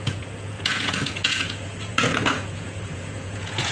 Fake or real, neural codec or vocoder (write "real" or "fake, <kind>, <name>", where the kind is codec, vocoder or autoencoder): fake, vocoder, Vocos